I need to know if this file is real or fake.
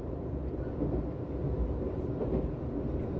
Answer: real